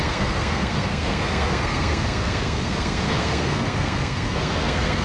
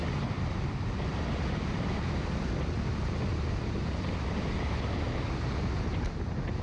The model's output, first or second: first